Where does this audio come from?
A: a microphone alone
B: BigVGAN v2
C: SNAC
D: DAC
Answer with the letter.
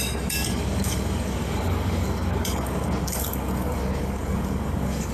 D